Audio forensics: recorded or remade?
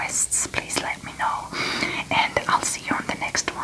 recorded